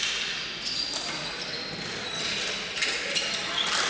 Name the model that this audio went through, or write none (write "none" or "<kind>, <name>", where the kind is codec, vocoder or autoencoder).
none